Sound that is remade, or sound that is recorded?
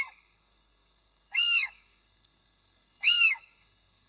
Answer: remade